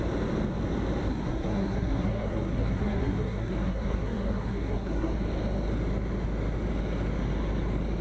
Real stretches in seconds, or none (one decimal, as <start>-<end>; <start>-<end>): 0.0-1.1; 5.1-8.0